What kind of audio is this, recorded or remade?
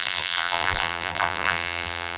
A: remade